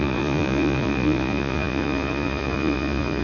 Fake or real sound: fake